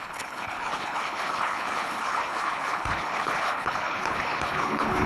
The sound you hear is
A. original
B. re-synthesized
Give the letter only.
B